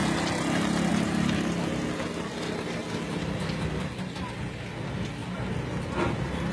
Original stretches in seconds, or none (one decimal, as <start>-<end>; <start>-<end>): 0.0-6.5

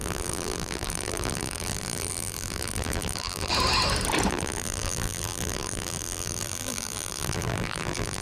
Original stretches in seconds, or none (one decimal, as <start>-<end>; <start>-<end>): 3.5-4.3

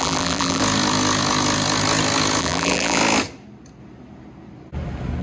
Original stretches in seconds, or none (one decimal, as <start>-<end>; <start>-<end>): 0.6-2.4; 3.0-5.2

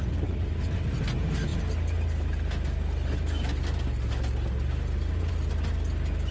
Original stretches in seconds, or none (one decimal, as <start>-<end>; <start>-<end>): 0.0-6.3